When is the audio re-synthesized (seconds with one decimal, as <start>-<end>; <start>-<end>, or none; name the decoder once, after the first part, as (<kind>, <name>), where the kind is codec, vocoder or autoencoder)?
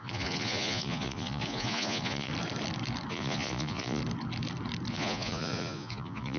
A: 0.0-2.3 (vocoder, Vocos); 3.1-4.0; 4.9-6.4